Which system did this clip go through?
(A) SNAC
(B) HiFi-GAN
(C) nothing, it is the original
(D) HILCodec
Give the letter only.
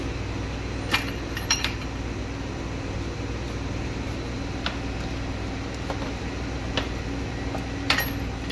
C